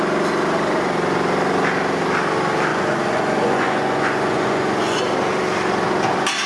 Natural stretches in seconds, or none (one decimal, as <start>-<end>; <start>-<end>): 0.0-2.7; 5.0-6.5